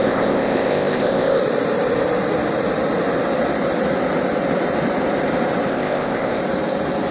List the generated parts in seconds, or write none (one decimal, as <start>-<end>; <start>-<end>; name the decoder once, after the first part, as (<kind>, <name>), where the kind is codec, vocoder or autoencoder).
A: 0.0-1.4 (codec, ZipCodec); 5.7-6.4